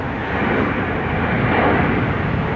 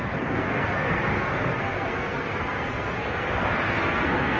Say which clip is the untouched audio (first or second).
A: first